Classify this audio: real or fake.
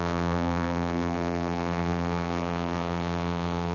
fake